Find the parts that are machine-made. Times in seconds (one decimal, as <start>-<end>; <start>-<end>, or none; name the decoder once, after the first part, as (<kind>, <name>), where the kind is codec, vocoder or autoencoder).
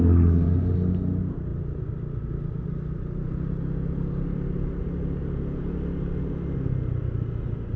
none